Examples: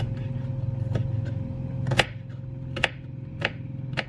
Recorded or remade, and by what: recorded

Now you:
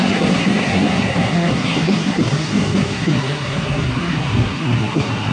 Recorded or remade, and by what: remade, codec, SNAC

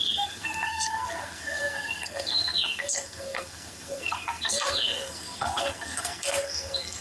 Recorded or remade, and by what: remade, codec, SNAC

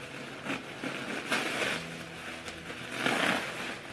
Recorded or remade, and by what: recorded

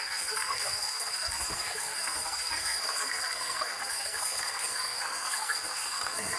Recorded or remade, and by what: remade, codec, SNAC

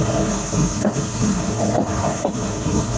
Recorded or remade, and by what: remade, codec, SNAC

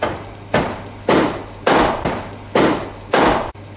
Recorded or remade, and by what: recorded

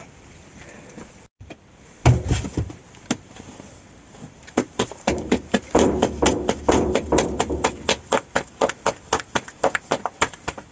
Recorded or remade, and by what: recorded